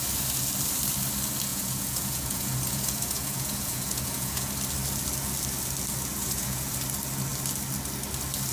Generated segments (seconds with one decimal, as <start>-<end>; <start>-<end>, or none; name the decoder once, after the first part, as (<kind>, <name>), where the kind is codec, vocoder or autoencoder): 1.5-4.5 (vocoder, Vocos); 6.2-6.7